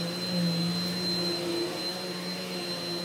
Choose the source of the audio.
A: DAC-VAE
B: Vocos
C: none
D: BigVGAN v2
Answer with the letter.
C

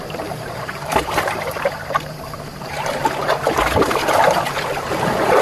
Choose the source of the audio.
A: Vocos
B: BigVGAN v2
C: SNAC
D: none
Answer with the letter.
B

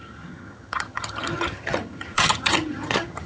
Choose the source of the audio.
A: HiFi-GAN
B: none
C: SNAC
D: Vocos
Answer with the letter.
A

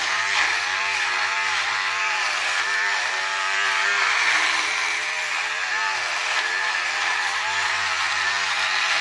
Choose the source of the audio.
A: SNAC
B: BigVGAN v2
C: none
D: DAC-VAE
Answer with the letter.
B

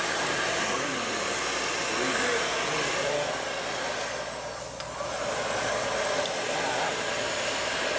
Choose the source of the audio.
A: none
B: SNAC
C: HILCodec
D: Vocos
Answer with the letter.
A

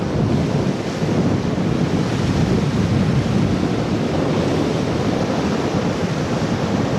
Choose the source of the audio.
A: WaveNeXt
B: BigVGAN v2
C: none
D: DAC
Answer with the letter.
C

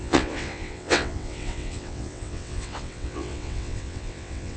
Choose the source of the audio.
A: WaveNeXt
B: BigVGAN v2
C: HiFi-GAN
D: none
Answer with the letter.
A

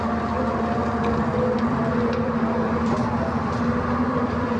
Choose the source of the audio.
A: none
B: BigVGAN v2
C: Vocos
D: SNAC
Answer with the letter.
B